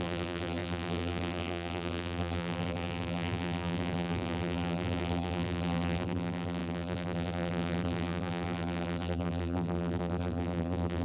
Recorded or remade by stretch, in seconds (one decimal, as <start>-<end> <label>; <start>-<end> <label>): 0.0-11.0 remade